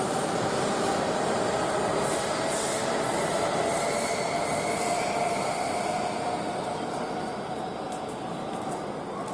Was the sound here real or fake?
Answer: real